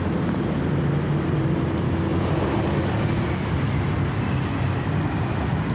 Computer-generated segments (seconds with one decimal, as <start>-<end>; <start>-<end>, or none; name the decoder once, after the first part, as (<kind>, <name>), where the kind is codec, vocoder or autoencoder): none